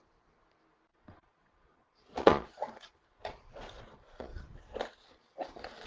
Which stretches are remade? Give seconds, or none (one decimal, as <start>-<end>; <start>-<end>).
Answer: 0.9-4.4